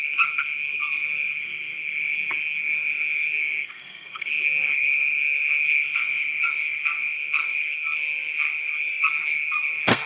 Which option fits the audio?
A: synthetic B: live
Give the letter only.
A